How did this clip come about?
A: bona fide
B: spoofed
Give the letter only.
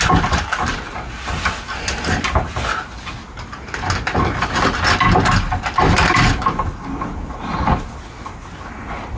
A